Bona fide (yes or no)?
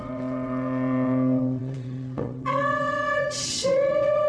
no